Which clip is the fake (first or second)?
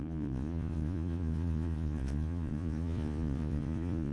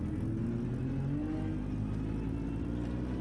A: first